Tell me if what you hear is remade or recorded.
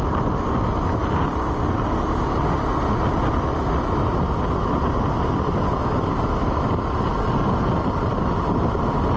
recorded